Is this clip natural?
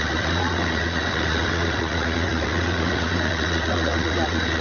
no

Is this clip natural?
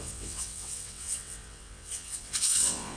no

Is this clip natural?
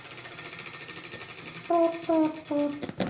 yes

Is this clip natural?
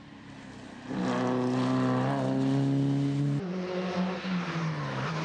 yes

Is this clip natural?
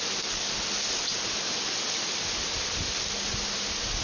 yes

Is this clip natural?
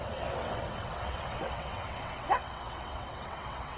no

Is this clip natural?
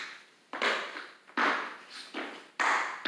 yes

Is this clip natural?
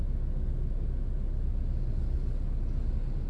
yes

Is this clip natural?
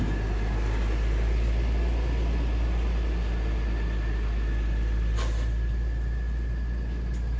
yes